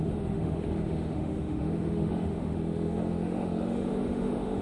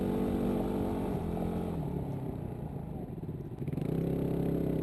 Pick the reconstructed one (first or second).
first